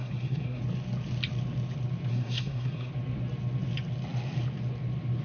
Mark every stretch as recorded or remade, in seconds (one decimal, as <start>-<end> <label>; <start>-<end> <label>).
0.0-0.6 remade; 0.6-2.1 recorded; 2.1-2.9 remade; 2.9-5.2 recorded